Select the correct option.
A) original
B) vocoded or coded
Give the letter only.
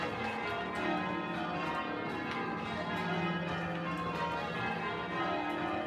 A